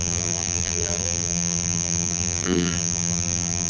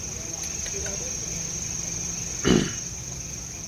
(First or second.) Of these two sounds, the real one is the second